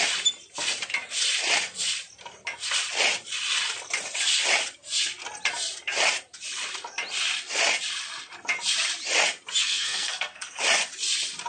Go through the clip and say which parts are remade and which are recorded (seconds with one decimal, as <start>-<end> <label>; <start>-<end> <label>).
0.0-9.6 recorded; 9.6-10.6 remade; 10.6-11.5 recorded